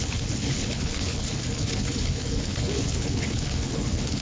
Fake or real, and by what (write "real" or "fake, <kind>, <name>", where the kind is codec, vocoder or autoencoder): fake, codec, HILCodec